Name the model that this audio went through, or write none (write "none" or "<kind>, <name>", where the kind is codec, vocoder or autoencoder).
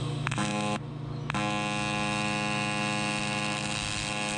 none